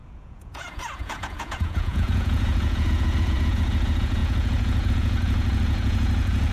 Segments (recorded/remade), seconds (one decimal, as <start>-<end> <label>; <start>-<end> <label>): 0.0-6.5 remade